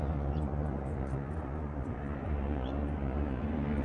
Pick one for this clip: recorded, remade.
remade